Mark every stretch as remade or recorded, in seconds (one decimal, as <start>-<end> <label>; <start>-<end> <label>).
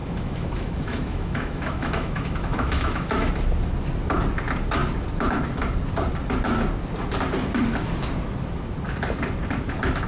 0.0-3.3 remade; 3.3-10.1 recorded